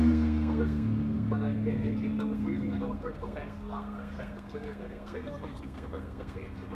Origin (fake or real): fake